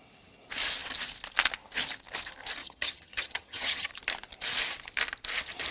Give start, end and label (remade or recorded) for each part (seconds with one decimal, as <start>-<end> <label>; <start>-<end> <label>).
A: 0.0-2.6 recorded; 2.6-3.9 remade; 3.9-5.7 recorded